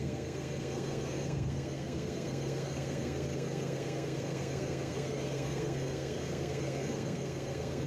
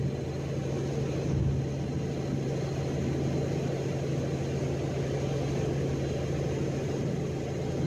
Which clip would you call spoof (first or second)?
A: first